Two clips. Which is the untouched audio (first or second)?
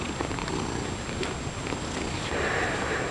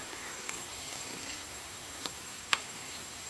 first